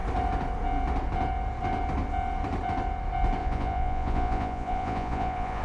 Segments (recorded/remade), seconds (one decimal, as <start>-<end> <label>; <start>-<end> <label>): 0.0-3.4 recorded; 3.4-5.6 remade